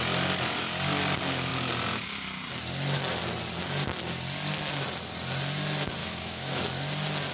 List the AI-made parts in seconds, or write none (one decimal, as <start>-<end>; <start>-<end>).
6.0-6.6